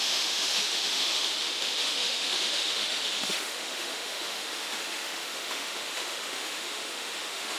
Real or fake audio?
fake